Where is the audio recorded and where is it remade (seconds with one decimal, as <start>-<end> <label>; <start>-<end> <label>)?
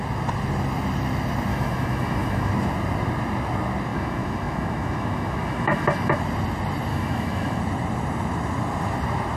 0.0-1.5 recorded; 1.5-2.5 remade; 2.5-3.9 recorded; 3.9-6.2 remade; 6.2-6.9 recorded; 6.9-7.6 remade; 7.6-9.4 recorded